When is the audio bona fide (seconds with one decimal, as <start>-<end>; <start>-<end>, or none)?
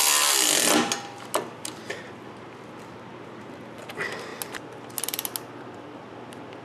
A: 0.0-6.6